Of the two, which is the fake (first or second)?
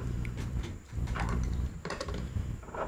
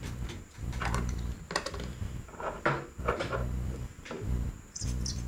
first